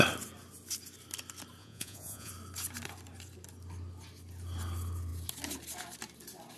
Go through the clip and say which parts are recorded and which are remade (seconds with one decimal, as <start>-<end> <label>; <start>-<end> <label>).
0.0-1.6 recorded; 1.6-2.3 remade; 2.3-6.6 recorded